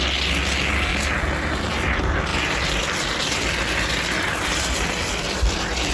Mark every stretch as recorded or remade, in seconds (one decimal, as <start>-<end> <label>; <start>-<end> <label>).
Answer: 0.0-2.3 recorded; 2.3-5.9 remade